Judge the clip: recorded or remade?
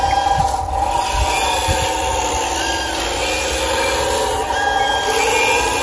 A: recorded